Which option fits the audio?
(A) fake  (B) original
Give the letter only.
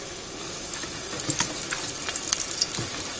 B